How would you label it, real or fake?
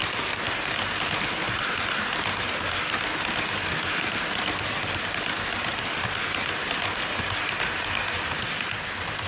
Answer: real